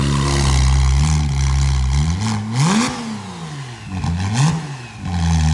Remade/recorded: recorded